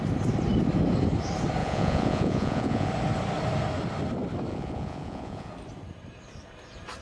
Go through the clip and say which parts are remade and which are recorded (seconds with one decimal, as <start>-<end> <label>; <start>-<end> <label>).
0.0-1.6 recorded; 1.6-2.9 remade; 2.9-4.5 recorded; 4.5-5.5 remade; 5.5-7.0 recorded